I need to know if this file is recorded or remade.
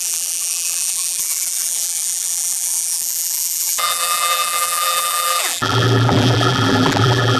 remade